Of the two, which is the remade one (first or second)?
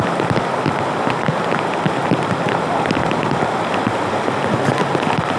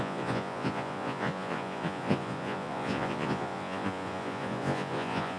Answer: second